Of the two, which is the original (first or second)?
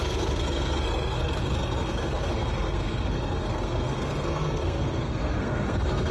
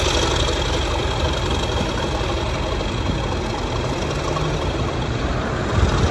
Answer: second